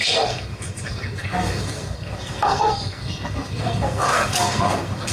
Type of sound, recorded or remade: remade